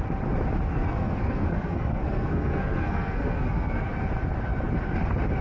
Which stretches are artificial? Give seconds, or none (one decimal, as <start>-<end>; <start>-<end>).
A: 0.7-3.9